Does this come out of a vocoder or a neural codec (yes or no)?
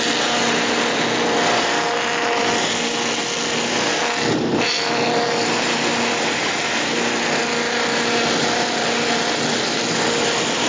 no